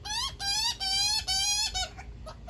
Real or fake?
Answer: real